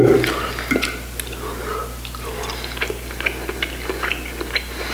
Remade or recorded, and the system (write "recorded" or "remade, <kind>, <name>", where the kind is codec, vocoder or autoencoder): recorded